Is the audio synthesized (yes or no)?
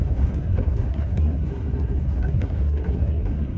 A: yes